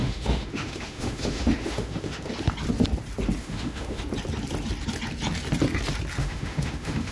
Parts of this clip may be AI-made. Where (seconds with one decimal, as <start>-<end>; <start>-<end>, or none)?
0.0-2.3; 3.4-4.0; 6.2-7.1